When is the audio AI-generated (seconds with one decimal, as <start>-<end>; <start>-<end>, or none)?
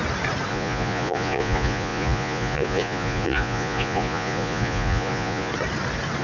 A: 0.5-5.5